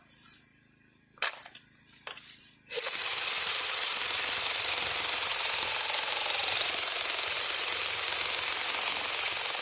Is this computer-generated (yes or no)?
yes